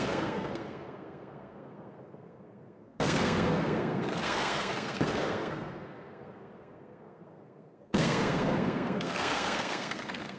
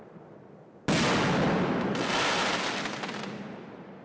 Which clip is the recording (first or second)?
second